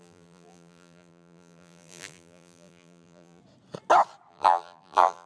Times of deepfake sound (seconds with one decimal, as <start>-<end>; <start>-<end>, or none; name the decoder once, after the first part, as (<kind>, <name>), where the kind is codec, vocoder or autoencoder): 0.0-3.4 (vocoder, BigVGAN v2); 4.3-5.3